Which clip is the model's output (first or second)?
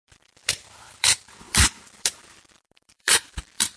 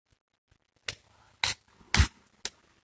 first